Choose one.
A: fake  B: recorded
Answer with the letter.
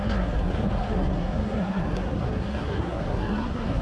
A